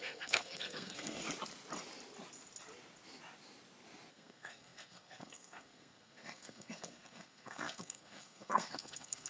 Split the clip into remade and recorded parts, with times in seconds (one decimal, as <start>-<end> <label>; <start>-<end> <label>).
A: 0.0-1.2 remade; 1.2-4.1 recorded; 4.1-9.3 remade